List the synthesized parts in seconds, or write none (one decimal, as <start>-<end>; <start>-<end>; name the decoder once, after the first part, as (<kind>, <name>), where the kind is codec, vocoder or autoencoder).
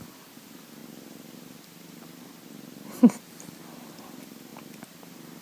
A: 0.8-4.0 (vocoder, BigVGAN v2); 4.5-5.4